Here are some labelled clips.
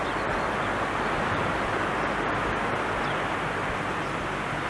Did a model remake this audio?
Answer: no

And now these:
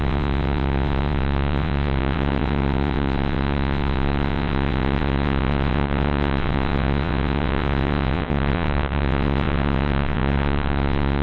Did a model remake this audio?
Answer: yes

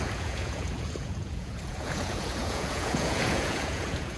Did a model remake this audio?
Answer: yes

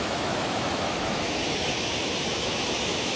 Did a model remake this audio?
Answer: yes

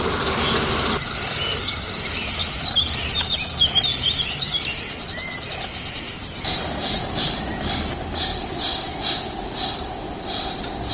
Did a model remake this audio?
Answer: yes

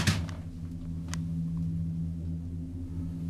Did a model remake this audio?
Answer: no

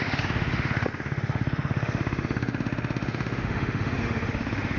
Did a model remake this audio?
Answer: yes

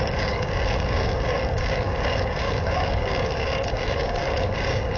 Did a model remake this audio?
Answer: yes